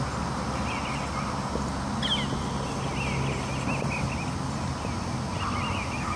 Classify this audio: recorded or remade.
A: recorded